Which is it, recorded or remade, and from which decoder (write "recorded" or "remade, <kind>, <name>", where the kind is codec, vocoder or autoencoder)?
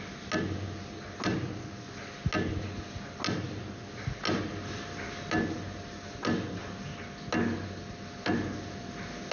recorded